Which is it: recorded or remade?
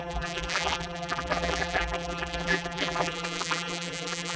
remade